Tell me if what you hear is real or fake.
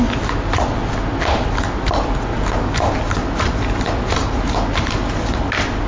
real